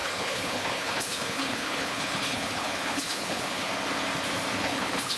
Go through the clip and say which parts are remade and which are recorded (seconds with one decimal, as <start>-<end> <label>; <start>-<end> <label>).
0.0-3.7 remade; 3.7-4.6 recorded; 4.6-5.2 remade